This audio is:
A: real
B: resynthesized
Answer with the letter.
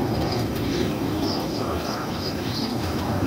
B